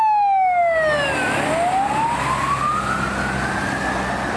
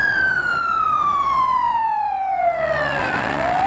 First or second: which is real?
first